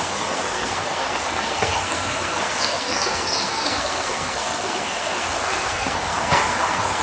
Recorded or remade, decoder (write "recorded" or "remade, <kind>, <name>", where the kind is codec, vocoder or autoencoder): remade, codec, SNAC